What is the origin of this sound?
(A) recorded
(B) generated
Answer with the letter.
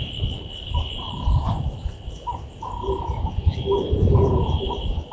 B